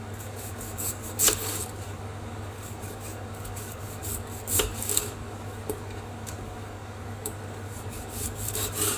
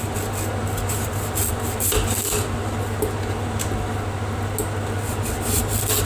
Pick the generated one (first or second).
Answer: first